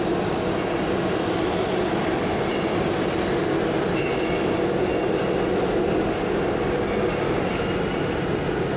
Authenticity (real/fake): real